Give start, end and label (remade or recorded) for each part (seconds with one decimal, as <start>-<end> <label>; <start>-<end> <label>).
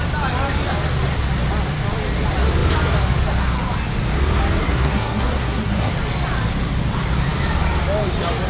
0.0-4.6 recorded; 4.6-5.9 remade; 5.9-8.5 recorded